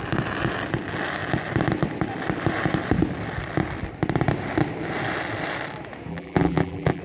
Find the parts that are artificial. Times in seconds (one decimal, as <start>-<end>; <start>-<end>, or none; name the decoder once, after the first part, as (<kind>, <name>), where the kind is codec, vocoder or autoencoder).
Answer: 6.1-7.0 (vocoder, BigVGAN v2)

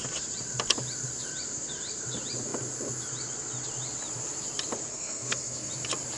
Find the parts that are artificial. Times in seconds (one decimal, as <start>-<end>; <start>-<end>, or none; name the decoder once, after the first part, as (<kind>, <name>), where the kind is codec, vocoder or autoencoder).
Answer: 4.9-5.7 (codec, SNAC)

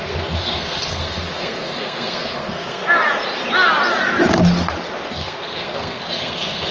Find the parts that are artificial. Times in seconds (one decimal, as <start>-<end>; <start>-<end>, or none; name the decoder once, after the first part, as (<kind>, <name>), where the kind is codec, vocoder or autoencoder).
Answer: 0.0-2.8 (codec, SNAC); 5.1-6.7

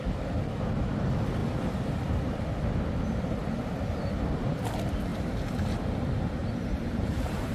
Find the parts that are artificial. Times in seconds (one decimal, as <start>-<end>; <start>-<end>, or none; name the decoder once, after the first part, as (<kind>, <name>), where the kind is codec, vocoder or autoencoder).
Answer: 1.4-2.3 (vocoder, BigVGAN v2); 5.1-5.8; 6.4-7.5

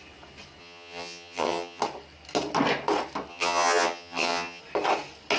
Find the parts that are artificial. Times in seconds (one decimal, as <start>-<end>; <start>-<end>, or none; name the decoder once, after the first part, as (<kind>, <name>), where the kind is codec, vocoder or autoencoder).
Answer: 0.6-1.8 (vocoder, HiFi-GAN); 3.3-4.6